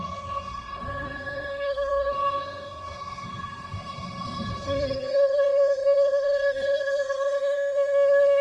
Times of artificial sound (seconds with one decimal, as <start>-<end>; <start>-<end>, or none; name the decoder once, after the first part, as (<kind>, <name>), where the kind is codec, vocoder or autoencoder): 0.0-8.4 (codec, SNAC)